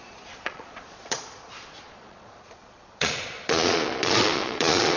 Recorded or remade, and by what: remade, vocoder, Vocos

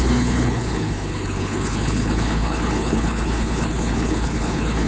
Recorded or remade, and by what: remade, codec, HILCodec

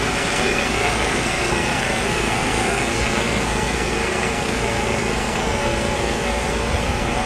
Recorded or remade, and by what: remade, codec, SNAC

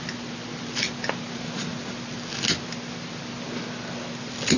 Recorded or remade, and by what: recorded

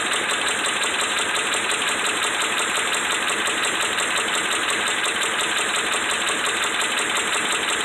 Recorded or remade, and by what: recorded